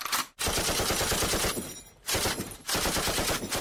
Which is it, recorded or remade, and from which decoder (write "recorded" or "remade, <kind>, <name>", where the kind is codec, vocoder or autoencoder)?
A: recorded